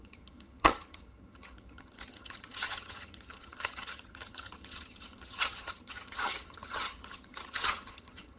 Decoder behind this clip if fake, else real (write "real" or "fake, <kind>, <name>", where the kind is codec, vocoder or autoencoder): fake, vocoder, HiFi-GAN